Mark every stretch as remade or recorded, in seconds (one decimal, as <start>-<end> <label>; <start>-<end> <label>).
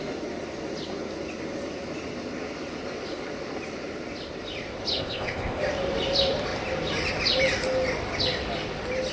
0.0-5.0 recorded; 5.0-5.6 remade; 5.6-9.1 recorded